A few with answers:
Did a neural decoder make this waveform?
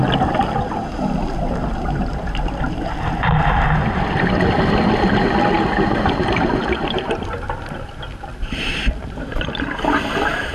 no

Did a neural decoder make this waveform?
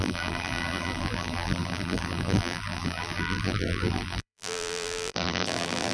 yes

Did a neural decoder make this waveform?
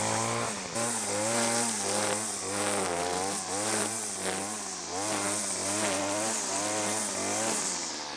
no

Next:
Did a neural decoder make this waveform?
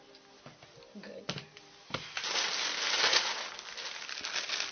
no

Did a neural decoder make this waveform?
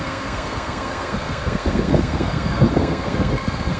yes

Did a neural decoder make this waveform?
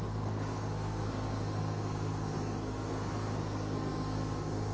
yes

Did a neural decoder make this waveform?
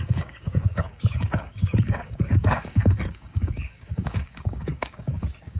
yes